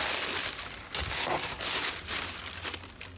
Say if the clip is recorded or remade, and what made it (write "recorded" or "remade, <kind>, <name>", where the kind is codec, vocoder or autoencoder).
recorded